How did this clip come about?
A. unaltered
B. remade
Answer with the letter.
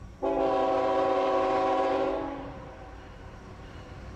B